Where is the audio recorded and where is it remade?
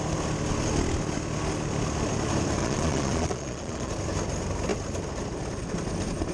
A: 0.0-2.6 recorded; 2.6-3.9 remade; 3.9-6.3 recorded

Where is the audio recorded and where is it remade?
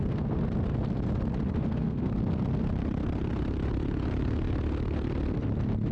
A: 0.0-0.4 remade; 0.4-1.7 recorded; 1.7-2.2 remade; 2.2-5.9 recorded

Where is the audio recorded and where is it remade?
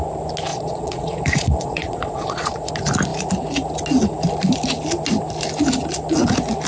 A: 0.0-0.5 recorded; 0.5-2.7 remade; 2.7-6.7 recorded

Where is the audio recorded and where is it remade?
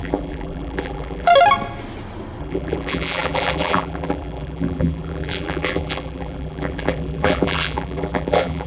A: 0.0-1.3 remade; 1.3-2.4 recorded; 2.4-8.7 remade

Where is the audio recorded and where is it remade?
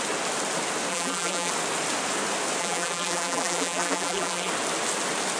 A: 0.0-0.9 recorded; 0.9-1.5 remade; 1.5-2.6 recorded; 2.6-4.5 remade; 4.5-5.4 recorded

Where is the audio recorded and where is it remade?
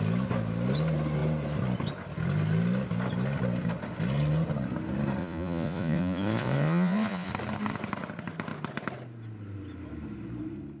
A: 0.0-5.2 recorded; 5.2-7.3 remade; 7.3-10.8 recorded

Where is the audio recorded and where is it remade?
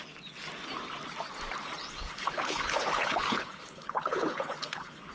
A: 0.0-1.8 recorded; 1.8-5.1 remade